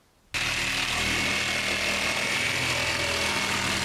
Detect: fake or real real